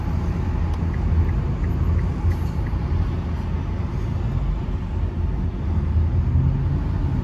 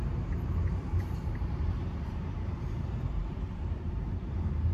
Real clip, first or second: first